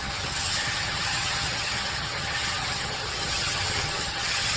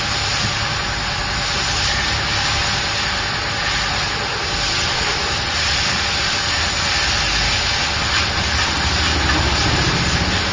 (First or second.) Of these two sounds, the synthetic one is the first